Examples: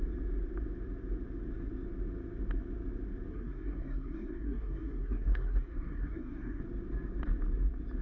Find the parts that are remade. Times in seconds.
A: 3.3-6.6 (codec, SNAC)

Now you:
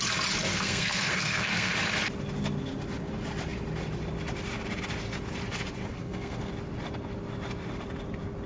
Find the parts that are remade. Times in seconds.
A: 0.5-1.7 (codec, SNAC); 5.9-6.5

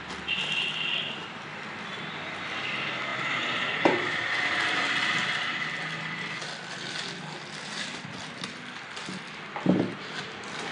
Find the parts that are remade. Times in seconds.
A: none